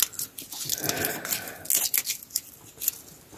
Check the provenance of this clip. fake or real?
real